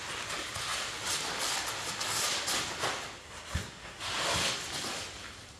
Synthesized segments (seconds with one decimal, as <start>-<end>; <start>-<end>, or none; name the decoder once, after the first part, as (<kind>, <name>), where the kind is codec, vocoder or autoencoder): 3.2-4.0 (codec, SNAC)